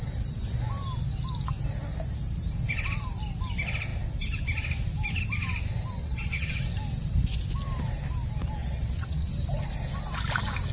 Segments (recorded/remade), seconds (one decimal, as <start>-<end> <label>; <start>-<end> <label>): 0.0-6.0 recorded; 6.0-6.7 remade; 6.7-8.6 recorded; 8.6-9.3 remade; 9.3-10.7 recorded

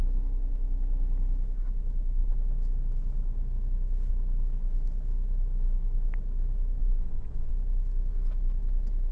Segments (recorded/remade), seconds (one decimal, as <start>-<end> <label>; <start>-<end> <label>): 0.0-6.8 recorded; 6.8-7.5 remade; 7.5-9.1 recorded

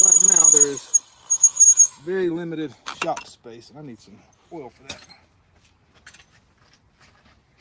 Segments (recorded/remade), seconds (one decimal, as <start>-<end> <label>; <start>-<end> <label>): 0.0-1.5 recorded; 1.5-2.3 remade; 2.3-7.6 recorded

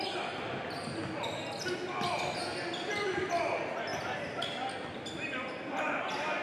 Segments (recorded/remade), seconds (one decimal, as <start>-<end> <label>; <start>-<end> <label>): 0.0-6.4 recorded

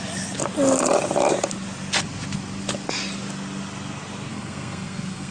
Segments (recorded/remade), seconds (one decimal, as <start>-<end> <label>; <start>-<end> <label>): 0.0-4.3 recorded; 4.3-5.3 remade